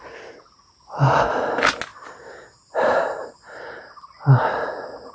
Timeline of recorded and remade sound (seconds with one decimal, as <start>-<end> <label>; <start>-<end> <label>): 0.0-5.1 recorded